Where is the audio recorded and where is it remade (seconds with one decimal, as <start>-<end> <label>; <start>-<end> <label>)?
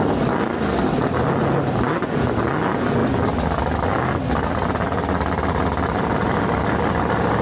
0.0-7.4 recorded